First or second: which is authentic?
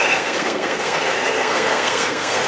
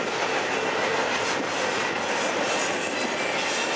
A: second